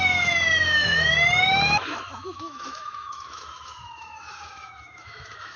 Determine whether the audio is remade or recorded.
remade